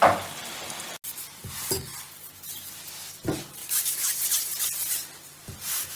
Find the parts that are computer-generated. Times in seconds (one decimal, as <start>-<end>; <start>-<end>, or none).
3.6-4.1